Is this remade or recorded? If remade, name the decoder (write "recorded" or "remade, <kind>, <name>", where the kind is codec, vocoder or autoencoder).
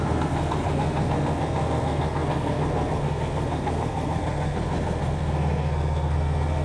remade, codec, SNAC